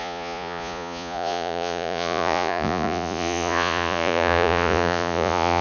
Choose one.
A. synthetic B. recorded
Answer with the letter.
A